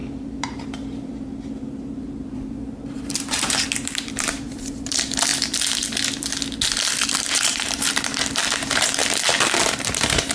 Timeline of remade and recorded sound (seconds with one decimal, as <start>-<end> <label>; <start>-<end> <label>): 0.0-5.3 remade; 5.3-7.4 recorded; 7.4-9.0 remade; 9.0-9.6 recorded; 9.6-10.3 remade